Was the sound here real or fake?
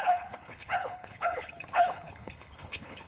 fake